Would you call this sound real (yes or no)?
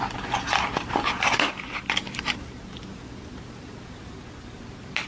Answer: yes